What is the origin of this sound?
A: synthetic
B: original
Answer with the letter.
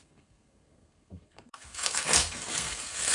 A